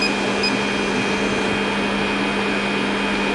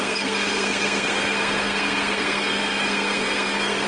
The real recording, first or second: first